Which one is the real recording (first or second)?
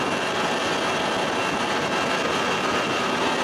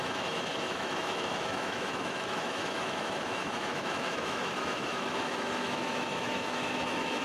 first